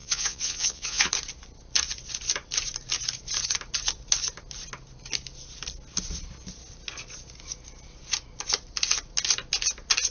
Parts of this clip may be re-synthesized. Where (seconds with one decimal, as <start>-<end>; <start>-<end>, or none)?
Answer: 0.0-1.1